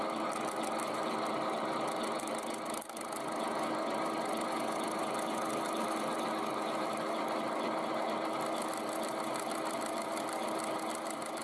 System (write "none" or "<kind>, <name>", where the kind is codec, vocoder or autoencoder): none